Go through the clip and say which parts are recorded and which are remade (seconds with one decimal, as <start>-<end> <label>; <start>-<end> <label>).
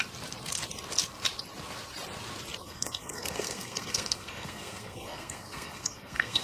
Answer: 0.0-2.6 recorded; 2.6-6.4 remade